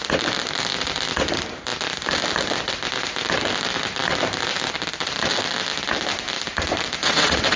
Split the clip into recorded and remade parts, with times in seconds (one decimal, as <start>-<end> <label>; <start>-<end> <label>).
0.0-7.0 recorded; 7.0-7.6 remade